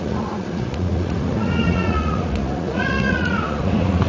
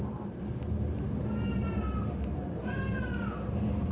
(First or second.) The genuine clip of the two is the second